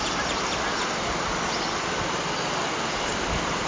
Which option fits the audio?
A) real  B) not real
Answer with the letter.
A